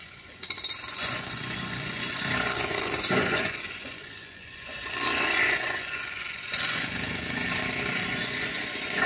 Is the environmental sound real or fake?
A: fake